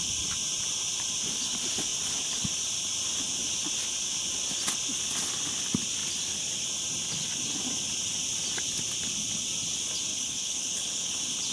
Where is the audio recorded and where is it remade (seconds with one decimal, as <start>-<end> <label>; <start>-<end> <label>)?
0.0-10.1 recorded; 10.1-11.1 remade; 11.1-11.5 recorded